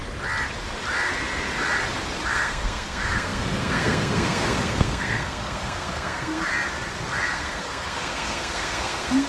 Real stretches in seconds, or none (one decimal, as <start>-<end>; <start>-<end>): 0.0-2.3; 6.5-7.3